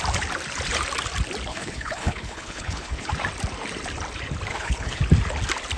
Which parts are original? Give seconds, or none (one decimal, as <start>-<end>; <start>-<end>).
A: 0.0-1.5; 3.1-4.5; 5.0-5.8